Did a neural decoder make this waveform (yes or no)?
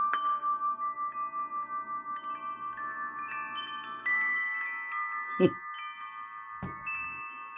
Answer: no